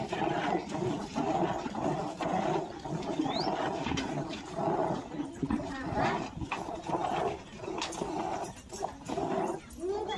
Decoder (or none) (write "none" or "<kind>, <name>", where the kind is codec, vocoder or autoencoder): none